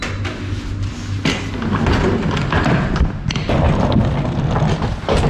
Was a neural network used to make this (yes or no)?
no